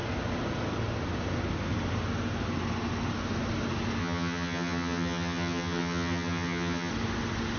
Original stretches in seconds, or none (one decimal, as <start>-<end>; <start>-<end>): 0.0-4.0; 6.9-7.6